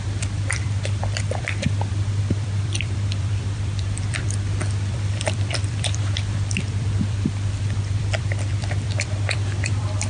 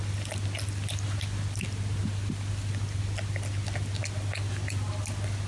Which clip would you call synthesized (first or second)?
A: first